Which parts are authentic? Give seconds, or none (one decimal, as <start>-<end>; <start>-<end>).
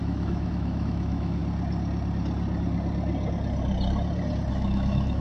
1.4-4.5